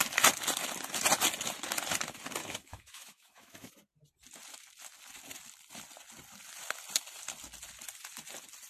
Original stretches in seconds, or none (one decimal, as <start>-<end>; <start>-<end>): 0.0-2.4; 3.7-8.7